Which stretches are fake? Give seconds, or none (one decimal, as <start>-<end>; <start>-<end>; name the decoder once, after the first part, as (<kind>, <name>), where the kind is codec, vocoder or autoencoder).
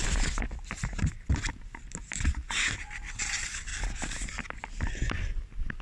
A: none